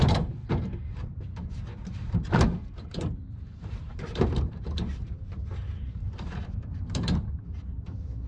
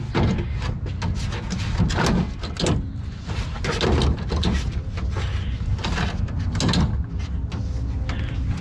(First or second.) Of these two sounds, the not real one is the first